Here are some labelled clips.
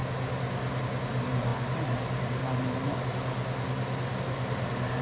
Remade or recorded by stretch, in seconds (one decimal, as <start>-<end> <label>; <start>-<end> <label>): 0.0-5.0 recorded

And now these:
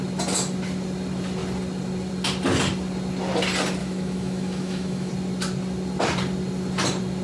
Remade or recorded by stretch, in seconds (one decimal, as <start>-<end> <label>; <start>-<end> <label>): 0.0-3.8 recorded; 3.8-5.1 remade; 5.1-7.2 recorded

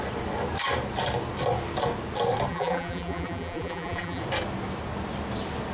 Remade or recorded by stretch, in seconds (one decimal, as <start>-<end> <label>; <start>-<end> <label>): 0.0-2.5 recorded; 2.5-4.2 remade; 4.2-5.7 recorded

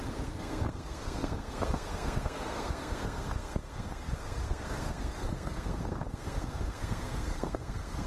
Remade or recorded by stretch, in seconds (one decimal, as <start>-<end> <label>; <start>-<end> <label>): 0.0-8.1 remade

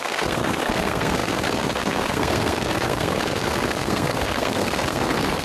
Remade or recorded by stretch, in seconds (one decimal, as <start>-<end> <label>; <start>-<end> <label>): 0.0-5.4 remade